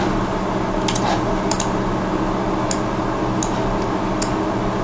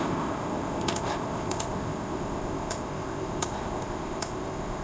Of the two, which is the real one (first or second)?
first